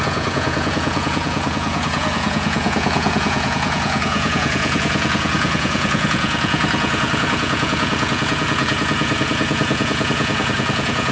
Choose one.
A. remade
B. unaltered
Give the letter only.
A